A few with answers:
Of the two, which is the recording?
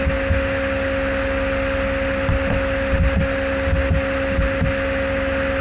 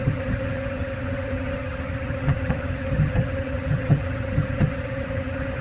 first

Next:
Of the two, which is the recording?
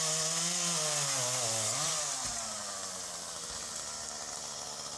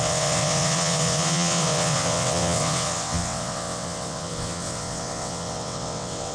first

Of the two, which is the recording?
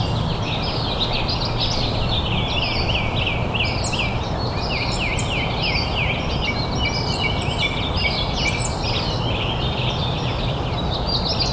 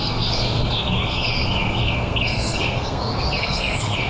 first